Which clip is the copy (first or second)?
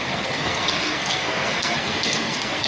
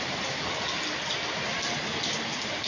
first